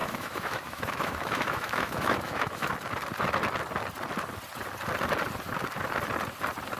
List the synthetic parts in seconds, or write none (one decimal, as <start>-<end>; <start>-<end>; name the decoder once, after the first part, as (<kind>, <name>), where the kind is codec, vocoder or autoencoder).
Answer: 0.0-2.7 (autoencoder, DAC-VAE)